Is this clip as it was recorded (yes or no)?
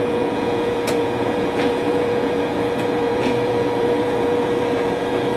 no